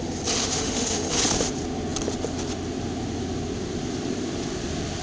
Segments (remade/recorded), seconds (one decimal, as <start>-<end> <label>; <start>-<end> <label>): 0.0-0.4 recorded; 0.4-1.1 remade; 1.1-5.0 recorded